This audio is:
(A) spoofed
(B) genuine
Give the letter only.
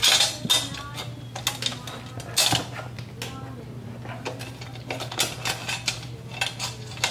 B